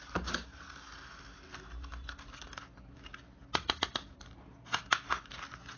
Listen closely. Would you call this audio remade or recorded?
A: recorded